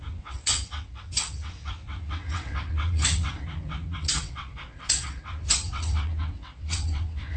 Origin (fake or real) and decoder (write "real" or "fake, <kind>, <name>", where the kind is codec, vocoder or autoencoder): fake, vocoder, WaveNeXt